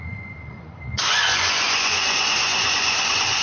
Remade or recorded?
remade